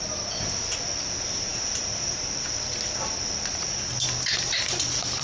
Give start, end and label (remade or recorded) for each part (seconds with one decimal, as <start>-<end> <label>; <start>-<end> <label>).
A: 0.0-5.2 recorded